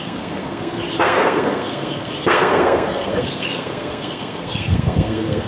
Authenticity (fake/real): fake